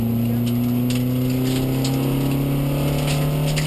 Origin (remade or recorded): recorded